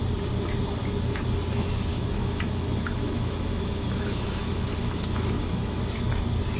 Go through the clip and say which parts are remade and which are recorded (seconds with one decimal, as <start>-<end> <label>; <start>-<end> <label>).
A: 0.0-1.9 recorded; 1.9-5.8 remade; 5.8-6.6 recorded